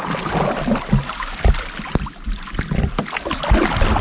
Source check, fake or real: real